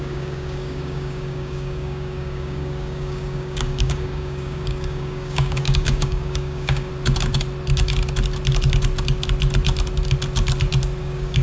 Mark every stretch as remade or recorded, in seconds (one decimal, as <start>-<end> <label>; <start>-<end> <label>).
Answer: 0.0-6.9 remade; 6.9-11.0 recorded; 11.0-11.4 remade